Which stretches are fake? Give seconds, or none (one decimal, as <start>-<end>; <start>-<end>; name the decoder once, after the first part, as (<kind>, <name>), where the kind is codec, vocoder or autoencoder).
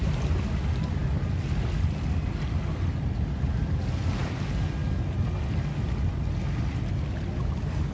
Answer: none